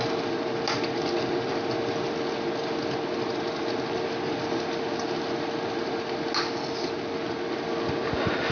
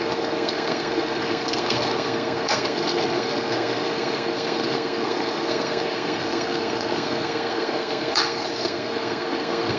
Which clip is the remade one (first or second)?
second